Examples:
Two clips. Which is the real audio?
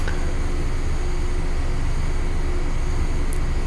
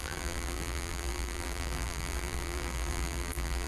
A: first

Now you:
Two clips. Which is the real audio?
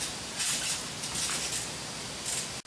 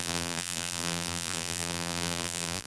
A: first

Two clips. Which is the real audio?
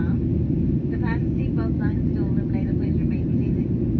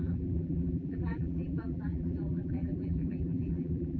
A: first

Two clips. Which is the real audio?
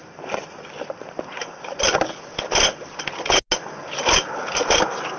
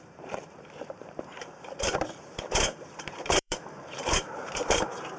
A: first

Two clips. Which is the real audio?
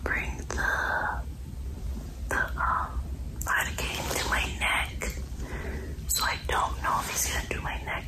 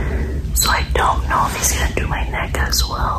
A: second